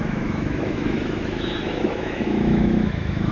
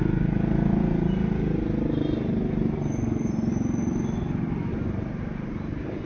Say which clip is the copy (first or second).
first